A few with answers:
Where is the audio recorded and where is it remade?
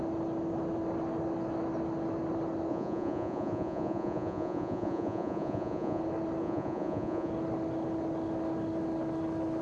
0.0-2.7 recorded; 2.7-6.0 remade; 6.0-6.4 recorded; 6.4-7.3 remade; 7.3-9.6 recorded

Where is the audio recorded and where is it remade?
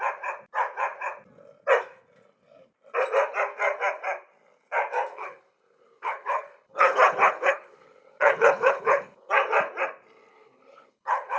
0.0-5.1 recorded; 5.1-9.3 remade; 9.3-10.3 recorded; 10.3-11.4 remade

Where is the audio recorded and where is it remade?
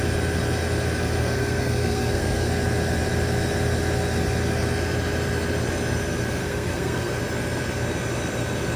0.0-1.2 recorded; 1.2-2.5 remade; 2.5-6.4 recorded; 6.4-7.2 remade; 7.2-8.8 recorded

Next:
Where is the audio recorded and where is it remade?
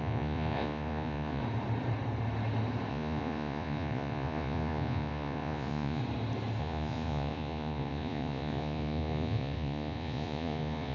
0.0-1.4 remade; 1.4-2.9 recorded; 2.9-6.0 remade; 6.0-6.6 recorded; 6.6-10.9 remade